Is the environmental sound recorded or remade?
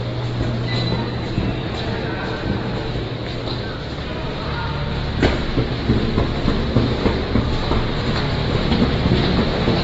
recorded